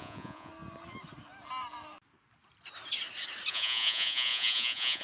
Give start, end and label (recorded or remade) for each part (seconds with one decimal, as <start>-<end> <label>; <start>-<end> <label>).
0.0-0.5 remade; 0.5-3.5 recorded; 3.5-5.0 remade